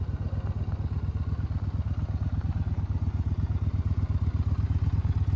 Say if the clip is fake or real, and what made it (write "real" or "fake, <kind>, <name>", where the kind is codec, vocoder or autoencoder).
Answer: real